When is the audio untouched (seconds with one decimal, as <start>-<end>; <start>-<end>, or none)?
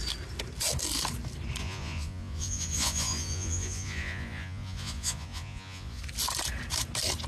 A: 0.0-1.6; 6.0-7.3